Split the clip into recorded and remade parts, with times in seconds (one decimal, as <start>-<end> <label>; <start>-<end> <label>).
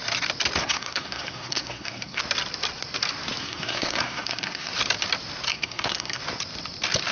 0.0-0.6 recorded; 0.6-2.2 remade; 2.2-3.4 recorded; 3.4-4.7 remade; 4.7-5.5 recorded; 5.5-6.2 remade; 6.2-7.1 recorded